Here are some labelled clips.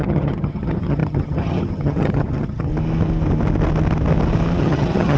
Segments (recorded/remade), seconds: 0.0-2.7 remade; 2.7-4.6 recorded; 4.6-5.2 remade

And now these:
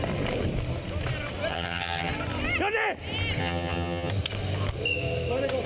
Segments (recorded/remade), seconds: 0.0-1.5 recorded; 1.5-2.1 remade; 2.1-3.4 recorded; 3.4-4.1 remade; 4.1-5.7 recorded

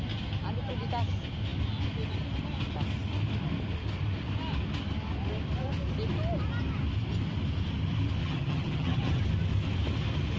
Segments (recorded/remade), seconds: 0.0-8.2 recorded; 8.2-9.2 remade; 9.2-10.4 recorded

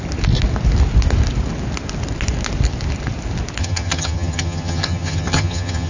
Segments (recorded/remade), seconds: 0.0-3.6 recorded; 3.6-5.9 remade

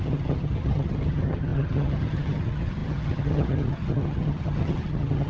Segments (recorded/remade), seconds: 0.0-5.3 remade

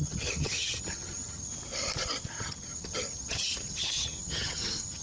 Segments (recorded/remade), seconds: 0.0-1.5 remade; 1.5-2.4 recorded; 2.4-5.0 remade

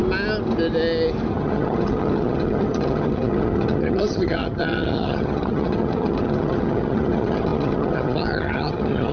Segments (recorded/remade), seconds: 0.0-1.3 recorded; 1.3-9.1 remade